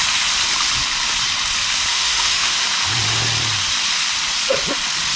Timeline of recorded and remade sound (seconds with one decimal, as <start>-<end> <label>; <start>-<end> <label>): 0.0-1.9 recorded; 1.9-2.6 remade; 2.6-5.2 recorded

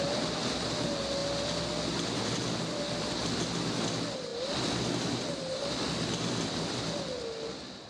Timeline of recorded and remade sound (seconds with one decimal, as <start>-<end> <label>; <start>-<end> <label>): 0.0-7.9 recorded

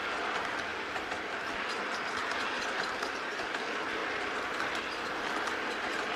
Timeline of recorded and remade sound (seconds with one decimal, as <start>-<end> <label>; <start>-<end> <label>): 0.0-6.2 recorded